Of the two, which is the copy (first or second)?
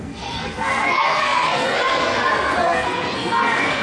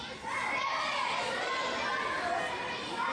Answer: first